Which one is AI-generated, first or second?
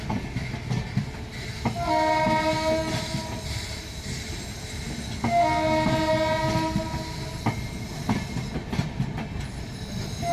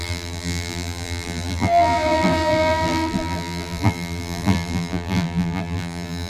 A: second